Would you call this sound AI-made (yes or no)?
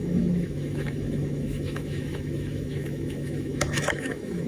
yes